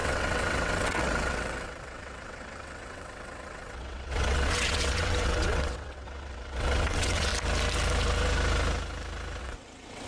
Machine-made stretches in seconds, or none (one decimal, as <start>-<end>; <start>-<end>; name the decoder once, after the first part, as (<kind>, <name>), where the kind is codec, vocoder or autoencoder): 0.0-7.3 (vocoder, WaveNeXt); 9.4-10.1